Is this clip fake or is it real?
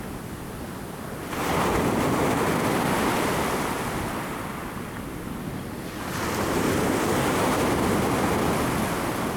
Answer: real